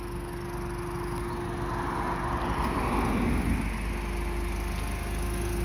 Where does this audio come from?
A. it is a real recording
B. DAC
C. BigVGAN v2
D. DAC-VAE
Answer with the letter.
A